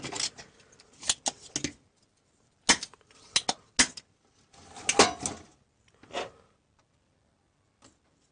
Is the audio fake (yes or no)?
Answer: no